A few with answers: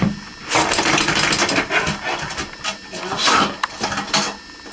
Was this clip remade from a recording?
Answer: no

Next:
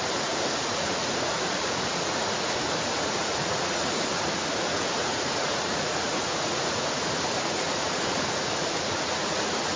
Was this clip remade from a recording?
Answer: yes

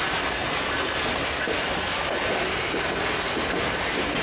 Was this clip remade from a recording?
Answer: no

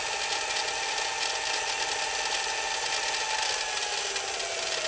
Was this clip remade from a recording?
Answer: no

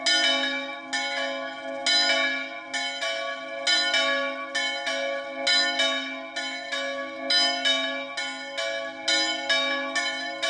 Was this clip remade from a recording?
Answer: no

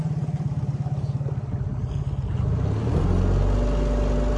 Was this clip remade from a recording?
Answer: no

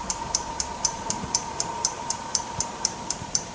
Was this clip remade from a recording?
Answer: yes